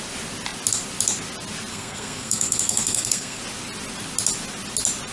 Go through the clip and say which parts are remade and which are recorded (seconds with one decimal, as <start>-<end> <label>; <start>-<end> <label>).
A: 0.0-1.7 recorded; 1.7-3.4 remade; 3.4-5.1 recorded